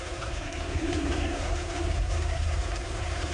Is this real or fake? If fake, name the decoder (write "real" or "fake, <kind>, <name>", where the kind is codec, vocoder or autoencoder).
fake, codec, SNAC